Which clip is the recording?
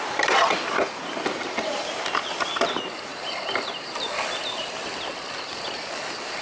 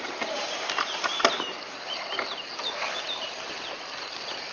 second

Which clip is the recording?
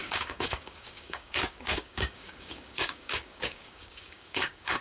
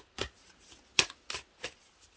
second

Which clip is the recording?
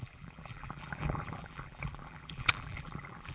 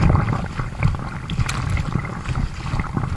second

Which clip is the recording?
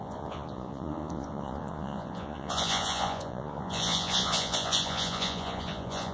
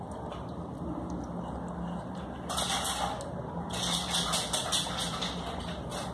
second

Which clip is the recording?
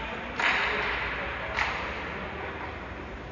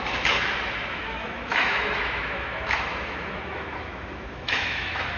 first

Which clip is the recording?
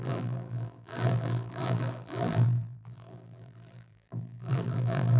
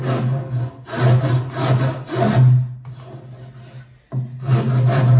second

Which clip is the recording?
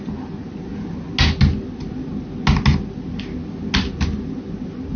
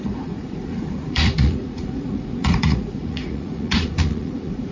first